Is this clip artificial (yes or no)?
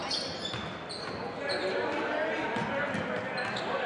no